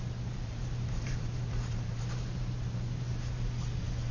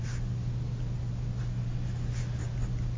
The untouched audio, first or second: second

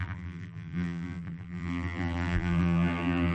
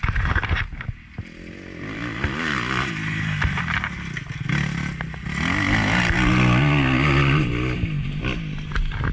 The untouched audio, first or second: second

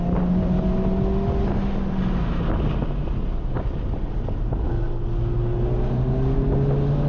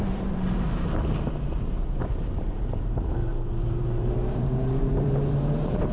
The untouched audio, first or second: first